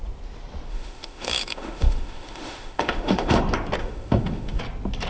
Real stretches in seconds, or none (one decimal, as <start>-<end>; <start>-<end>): 0.0-0.7; 3.4-3.8; 4.6-5.1